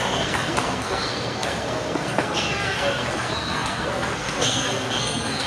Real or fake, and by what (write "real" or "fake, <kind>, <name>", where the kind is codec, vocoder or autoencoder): fake, codec, SNAC